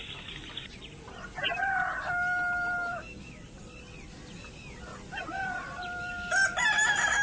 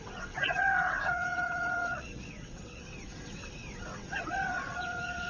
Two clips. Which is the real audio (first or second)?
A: first